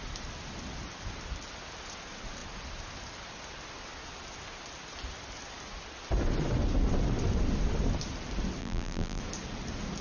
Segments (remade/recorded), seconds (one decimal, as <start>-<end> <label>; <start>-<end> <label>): 0.0-8.6 recorded; 8.6-9.2 remade; 9.2-10.0 recorded